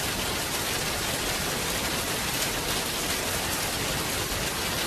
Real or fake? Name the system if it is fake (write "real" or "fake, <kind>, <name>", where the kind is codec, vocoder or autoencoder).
real